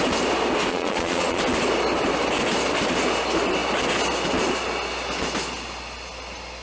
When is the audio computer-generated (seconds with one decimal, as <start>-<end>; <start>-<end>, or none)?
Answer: 0.7-1.4